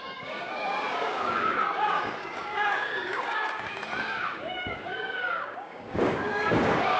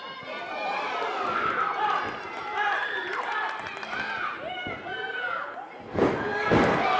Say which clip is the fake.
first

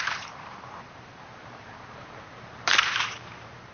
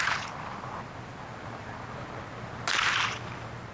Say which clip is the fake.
first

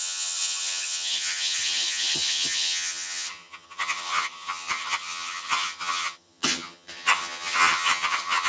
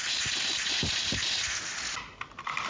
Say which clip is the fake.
first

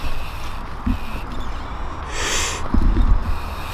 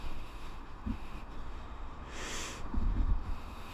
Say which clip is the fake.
second